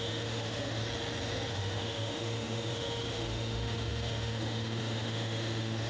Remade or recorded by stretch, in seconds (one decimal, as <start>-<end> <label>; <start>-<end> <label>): 0.0-0.8 remade; 0.8-1.5 recorded; 1.5-5.9 remade